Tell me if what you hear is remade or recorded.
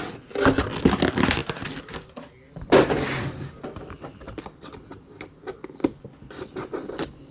recorded